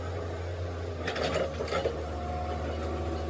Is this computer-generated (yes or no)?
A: no